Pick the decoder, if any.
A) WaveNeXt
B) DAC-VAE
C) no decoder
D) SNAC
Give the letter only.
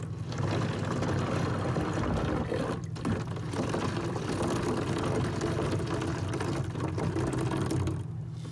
C